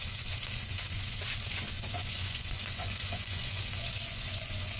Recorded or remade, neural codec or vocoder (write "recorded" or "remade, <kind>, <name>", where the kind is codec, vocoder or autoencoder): remade, vocoder, Vocos